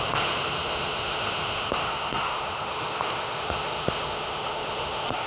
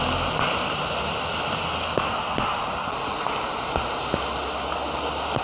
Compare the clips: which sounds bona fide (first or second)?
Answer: second